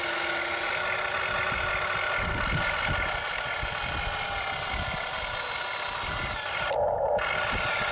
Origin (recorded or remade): recorded